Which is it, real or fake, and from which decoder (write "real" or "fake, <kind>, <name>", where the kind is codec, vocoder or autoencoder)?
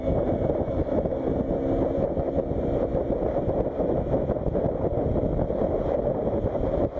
real